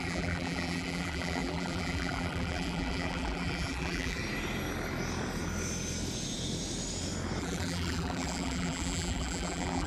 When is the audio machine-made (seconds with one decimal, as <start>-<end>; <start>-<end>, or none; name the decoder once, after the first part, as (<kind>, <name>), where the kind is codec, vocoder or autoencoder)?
0.0-4.2 (vocoder, BigVGAN v2); 7.4-9.9